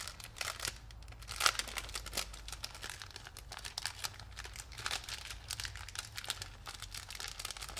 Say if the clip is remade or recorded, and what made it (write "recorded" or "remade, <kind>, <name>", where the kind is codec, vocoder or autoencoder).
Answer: recorded